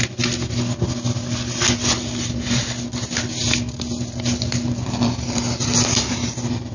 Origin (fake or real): real